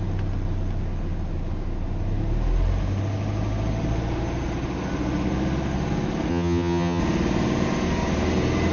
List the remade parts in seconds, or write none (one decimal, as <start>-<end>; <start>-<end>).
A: 6.3-7.0